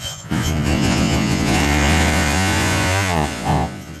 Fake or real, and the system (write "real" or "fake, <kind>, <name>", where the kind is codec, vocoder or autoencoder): fake, vocoder, Vocos